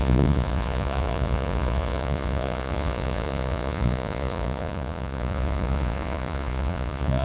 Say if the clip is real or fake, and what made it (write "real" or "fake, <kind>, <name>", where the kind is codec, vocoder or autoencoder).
fake, vocoder, Vocos